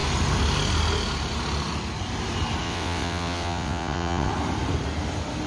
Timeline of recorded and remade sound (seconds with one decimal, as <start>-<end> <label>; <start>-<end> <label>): 0.0-2.6 recorded; 2.6-4.3 remade; 4.3-5.5 recorded